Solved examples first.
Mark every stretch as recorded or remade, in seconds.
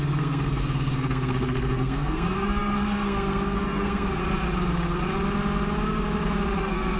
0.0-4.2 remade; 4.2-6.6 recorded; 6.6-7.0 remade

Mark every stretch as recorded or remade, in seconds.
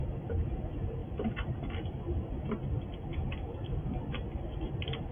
0.0-1.0 recorded; 1.0-1.8 remade; 1.8-3.1 recorded; 3.1-4.1 remade; 4.1-5.1 recorded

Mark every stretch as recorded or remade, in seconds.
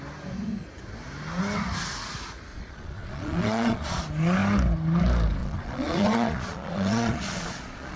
0.0-2.5 recorded; 2.5-4.0 remade; 4.0-5.4 recorded; 5.4-8.0 remade